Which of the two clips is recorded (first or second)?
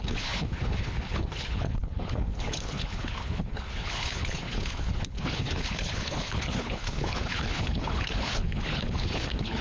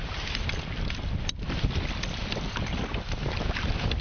second